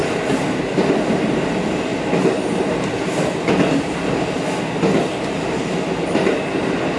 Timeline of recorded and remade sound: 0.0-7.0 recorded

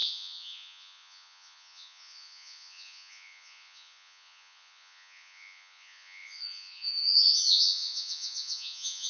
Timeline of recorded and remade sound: 0.0-9.1 remade